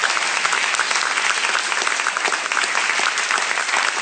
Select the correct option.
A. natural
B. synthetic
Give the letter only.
A